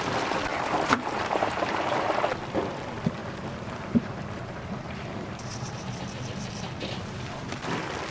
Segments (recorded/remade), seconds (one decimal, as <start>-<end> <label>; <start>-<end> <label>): 0.0-0.5 recorded; 0.5-2.2 remade; 2.2-3.2 recorded; 3.2-6.2 remade; 6.2-8.1 recorded